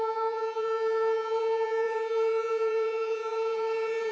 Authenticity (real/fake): fake